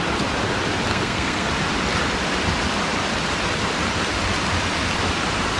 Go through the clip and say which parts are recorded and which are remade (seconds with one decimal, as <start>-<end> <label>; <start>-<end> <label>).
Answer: 0.0-0.9 recorded; 0.9-1.5 remade; 1.5-5.6 recorded